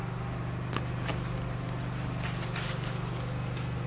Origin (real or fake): real